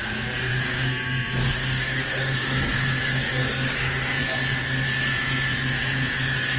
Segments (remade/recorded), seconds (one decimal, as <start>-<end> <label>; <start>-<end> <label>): 0.0-0.5 recorded; 0.5-4.2 remade; 4.2-6.6 recorded